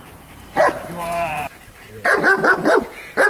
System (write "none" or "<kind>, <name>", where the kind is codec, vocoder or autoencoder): vocoder, BigVGAN v2